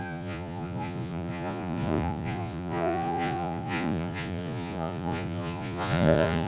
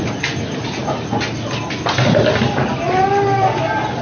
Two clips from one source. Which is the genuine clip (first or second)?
second